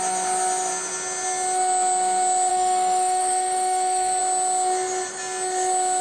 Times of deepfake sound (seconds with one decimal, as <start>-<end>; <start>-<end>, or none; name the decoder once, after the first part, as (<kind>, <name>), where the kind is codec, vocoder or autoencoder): 2.5-4.2 (codec, DAC)